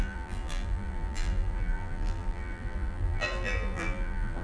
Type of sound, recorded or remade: remade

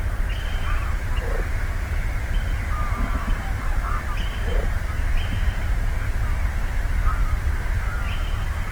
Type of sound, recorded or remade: recorded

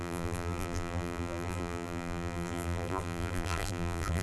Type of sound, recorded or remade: remade